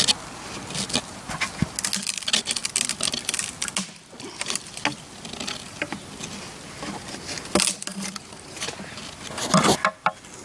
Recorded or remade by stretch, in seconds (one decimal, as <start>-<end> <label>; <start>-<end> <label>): 0.0-10.4 recorded